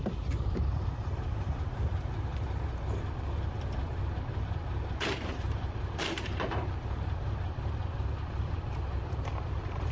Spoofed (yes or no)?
yes